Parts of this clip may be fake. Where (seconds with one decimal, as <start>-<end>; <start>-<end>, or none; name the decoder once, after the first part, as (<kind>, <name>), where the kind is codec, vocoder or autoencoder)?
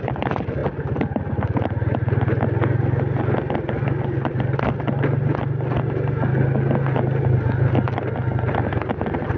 none